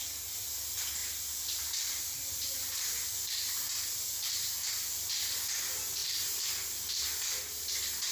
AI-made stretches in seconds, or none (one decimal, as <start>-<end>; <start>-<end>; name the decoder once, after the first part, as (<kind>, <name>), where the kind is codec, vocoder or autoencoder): 1.0-5.1 (vocoder, BigVGAN v2)